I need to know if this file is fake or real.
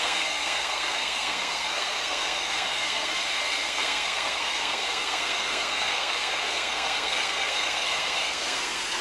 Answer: fake